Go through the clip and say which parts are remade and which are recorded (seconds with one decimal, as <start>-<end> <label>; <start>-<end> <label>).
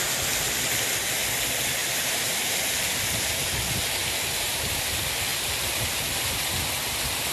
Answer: 0.0-1.8 recorded; 1.8-2.4 remade; 2.4-4.0 recorded; 4.0-4.8 remade; 4.8-7.3 recorded